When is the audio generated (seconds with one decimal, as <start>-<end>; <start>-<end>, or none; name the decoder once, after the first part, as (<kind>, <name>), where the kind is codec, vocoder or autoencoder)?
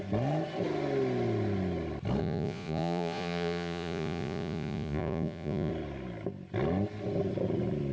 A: 2.2-5.7 (vocoder, Vocos)